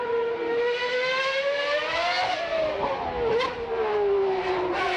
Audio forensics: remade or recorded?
recorded